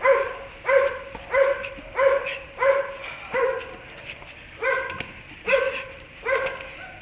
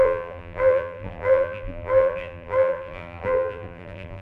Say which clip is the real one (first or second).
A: first